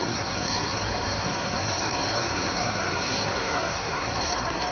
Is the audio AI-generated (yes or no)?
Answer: yes